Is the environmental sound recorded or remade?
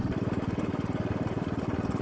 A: recorded